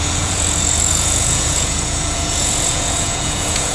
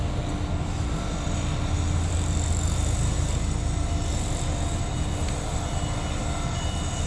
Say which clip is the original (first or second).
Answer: second